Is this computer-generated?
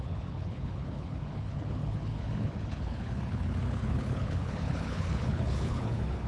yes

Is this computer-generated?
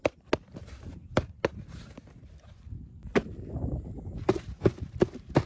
no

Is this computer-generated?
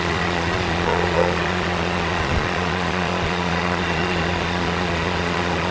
yes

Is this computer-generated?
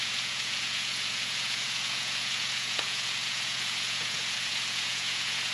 yes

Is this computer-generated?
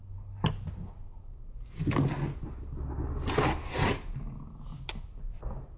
no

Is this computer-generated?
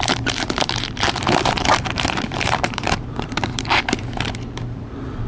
yes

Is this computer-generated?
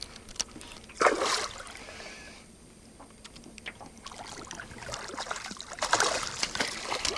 no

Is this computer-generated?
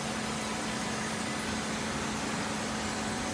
no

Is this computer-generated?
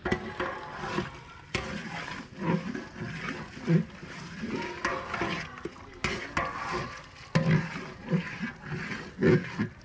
no